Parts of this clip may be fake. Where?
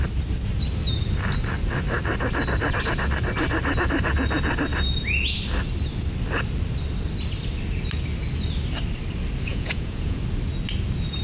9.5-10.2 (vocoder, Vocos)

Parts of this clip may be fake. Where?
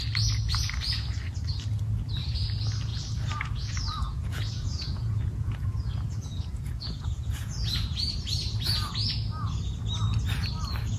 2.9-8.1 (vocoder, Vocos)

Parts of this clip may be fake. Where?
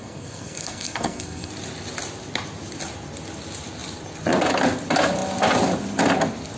0.0-1.5 (codec, SNAC)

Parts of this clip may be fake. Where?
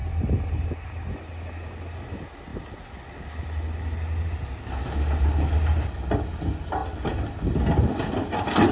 0.0-0.7 (vocoder, BigVGAN v2)